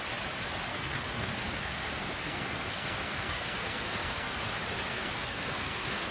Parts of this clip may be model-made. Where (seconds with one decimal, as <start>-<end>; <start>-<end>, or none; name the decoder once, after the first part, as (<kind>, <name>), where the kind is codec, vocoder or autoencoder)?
0.7-4.4 (codec, SNAC); 4.9-6.1